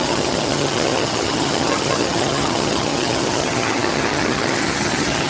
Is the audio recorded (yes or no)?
no